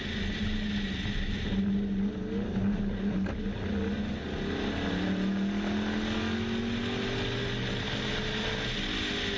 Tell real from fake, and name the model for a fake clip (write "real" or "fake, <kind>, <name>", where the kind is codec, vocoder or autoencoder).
real